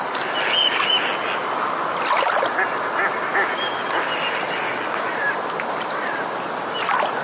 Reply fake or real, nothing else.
real